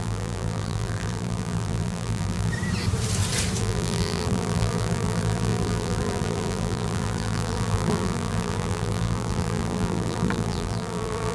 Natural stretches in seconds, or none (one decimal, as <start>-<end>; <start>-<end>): 2.5-3.6